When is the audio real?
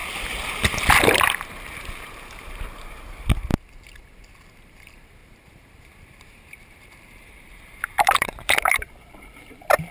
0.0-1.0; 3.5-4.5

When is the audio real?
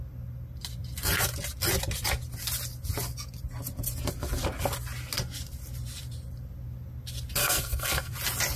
0.0-7.4; 8.1-8.6